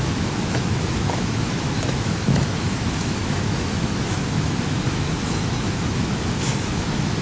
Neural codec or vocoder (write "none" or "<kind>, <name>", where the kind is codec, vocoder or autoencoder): autoencoder, DAC-VAE